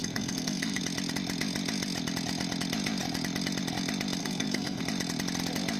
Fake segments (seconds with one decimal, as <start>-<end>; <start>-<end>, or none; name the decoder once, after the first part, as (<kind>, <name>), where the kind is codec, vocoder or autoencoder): 0.0-0.8 (codec, SNAC); 4.2-4.8